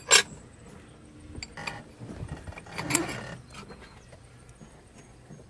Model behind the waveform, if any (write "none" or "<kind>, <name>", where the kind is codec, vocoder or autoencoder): none